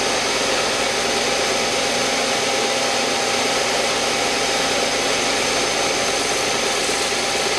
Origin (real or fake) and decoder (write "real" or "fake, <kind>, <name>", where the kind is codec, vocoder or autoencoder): real